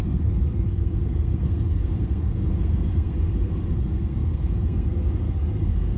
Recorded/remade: remade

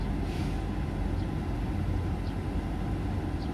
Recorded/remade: recorded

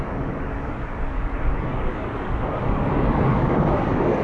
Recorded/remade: remade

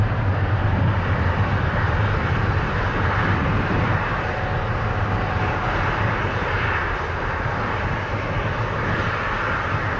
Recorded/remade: recorded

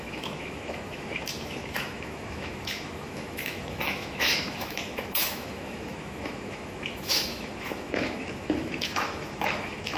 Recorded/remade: remade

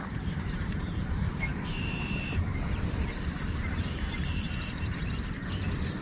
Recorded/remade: remade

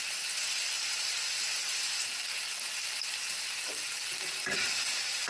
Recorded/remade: recorded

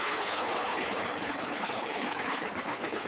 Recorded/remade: remade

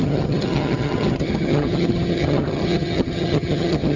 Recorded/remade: remade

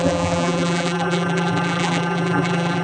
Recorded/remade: remade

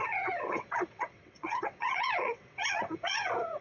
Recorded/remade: remade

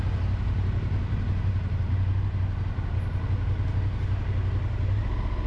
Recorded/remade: recorded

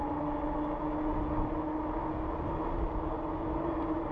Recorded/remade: recorded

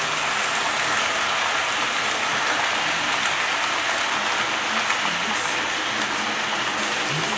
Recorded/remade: recorded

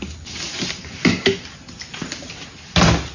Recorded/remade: recorded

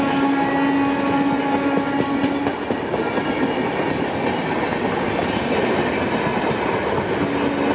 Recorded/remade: recorded